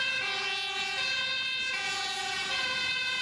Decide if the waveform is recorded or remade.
remade